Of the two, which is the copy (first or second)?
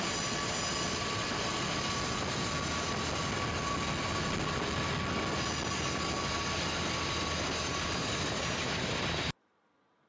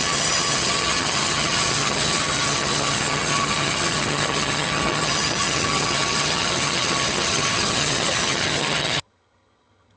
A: second